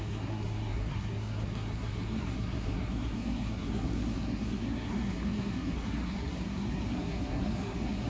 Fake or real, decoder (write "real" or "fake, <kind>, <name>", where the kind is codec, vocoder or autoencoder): fake, codec, SNAC